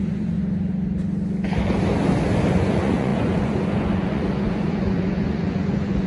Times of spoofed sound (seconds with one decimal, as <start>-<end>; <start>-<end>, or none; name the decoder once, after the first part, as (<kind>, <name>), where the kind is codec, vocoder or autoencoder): 0.0-0.4 (vocoder, Vocos); 2.5-6.1